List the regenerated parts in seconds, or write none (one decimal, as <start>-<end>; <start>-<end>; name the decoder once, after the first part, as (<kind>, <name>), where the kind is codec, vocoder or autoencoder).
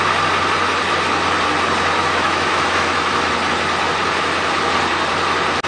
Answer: 2.0-3.3 (autoencoder, DAC-VAE)